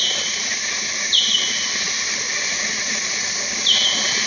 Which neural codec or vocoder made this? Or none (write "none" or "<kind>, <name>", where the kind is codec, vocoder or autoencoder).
none